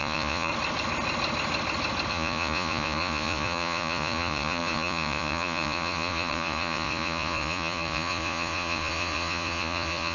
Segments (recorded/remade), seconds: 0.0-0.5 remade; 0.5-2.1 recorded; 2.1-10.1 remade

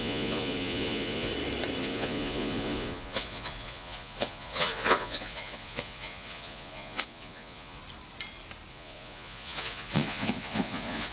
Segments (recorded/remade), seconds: 0.0-1.3 remade; 1.3-1.8 recorded; 1.8-7.8 remade; 7.8-8.7 recorded; 8.7-11.1 remade

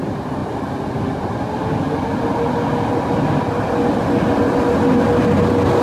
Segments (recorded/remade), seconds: 0.0-5.8 recorded

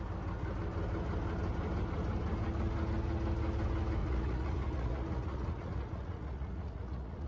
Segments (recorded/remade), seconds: 0.0-4.0 recorded; 4.0-7.3 remade

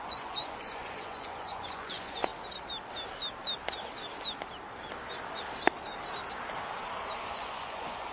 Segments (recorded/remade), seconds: 0.0-2.3 remade; 2.3-7.2 recorded; 7.2-8.1 remade